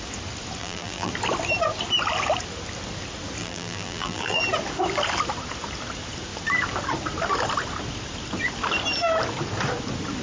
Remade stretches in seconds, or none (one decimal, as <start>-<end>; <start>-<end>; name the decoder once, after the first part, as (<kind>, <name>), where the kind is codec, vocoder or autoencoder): 0.6-1.1 (vocoder, BigVGAN v2); 3.4-4.4